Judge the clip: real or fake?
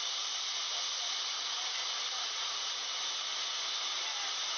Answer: real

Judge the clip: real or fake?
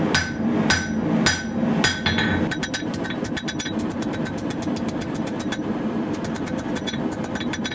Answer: real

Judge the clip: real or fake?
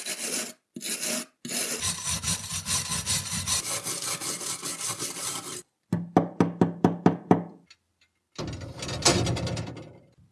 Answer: real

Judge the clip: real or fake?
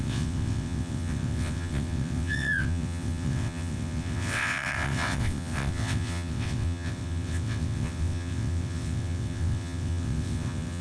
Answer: fake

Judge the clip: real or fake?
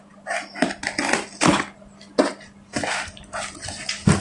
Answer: real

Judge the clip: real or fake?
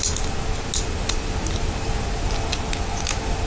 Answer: real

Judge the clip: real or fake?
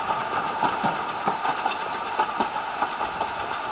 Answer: real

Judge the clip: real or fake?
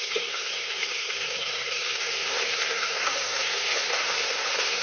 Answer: fake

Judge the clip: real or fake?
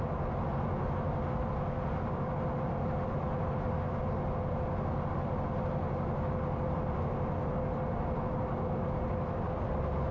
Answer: real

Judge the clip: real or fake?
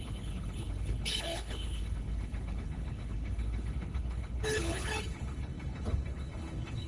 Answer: fake